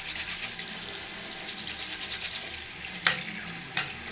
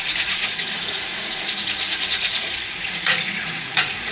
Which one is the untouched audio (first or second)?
first